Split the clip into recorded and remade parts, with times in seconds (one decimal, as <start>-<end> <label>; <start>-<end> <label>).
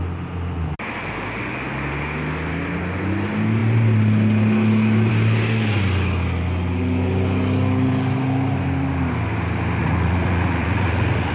0.0-9.8 recorded; 9.8-11.3 remade